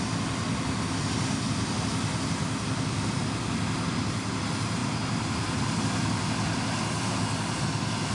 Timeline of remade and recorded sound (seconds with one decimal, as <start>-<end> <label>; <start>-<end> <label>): 0.0-8.1 recorded